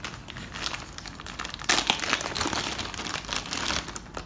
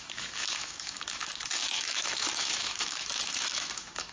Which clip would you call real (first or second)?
first